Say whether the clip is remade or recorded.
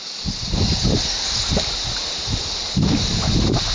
recorded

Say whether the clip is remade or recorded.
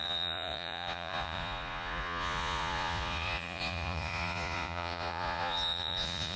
remade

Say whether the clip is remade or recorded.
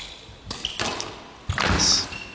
recorded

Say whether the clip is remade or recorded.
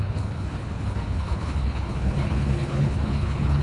remade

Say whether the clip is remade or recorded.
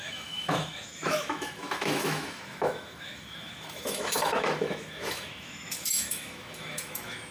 remade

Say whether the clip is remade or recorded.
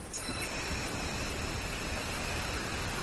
recorded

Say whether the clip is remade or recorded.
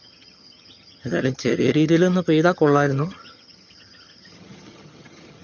remade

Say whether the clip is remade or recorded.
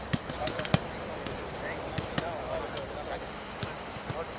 recorded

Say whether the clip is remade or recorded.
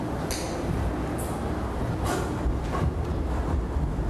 recorded